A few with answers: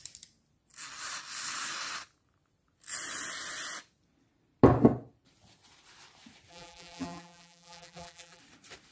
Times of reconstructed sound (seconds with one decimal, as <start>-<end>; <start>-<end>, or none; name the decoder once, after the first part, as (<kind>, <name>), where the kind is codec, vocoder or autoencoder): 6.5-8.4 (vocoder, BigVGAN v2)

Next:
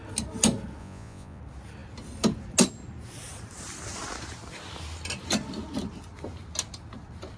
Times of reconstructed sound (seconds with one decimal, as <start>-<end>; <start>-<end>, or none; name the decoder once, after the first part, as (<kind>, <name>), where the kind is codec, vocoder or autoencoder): 0.8-1.4 (vocoder, Vocos)

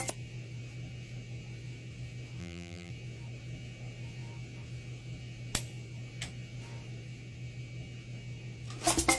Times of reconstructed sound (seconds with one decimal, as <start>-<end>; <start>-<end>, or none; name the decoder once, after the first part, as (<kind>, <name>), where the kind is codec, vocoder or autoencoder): 2.4-2.9 (vocoder, BigVGAN v2)

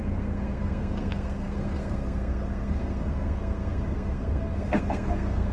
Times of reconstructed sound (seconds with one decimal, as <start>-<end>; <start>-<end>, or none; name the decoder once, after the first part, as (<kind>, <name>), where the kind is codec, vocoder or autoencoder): 0.0-5.5 (codec, SNAC)